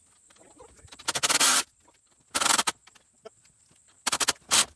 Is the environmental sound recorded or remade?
recorded